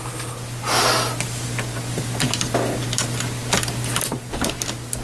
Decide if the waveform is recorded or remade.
recorded